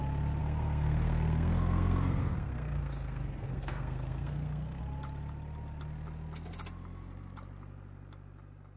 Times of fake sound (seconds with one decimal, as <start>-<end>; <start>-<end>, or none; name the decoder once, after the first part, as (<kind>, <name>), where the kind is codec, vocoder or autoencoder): 0.4-4.8 (codec, SNAC)